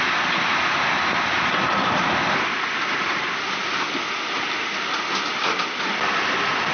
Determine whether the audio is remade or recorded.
recorded